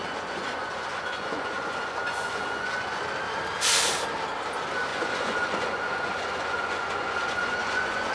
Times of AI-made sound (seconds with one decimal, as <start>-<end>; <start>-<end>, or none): 0.0-3.0; 4.9-8.1